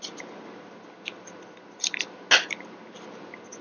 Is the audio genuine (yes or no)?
yes